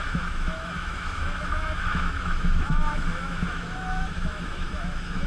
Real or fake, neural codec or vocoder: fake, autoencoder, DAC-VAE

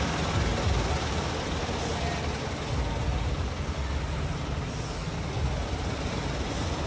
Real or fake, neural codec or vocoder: real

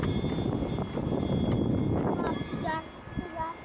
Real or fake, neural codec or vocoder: real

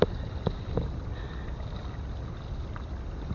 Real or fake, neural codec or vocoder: real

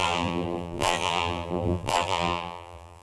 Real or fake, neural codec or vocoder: fake, vocoder, BigVGAN v2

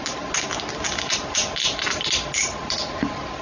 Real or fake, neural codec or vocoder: real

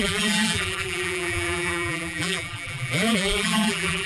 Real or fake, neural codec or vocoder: fake, vocoder, BigVGAN v2